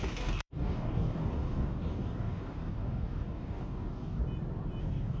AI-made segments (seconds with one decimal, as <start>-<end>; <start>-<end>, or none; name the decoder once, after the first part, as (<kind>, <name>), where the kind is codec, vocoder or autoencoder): 0.0-4.2 (codec, DAC); 4.8-5.2